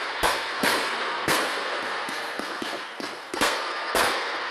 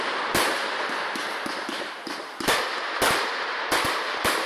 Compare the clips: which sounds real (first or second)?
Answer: second